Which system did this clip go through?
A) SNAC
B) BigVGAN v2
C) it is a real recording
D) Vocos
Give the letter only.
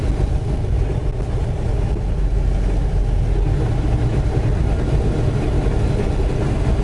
C